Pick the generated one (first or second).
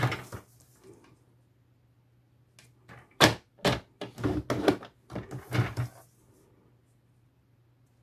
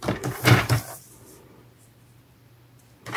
second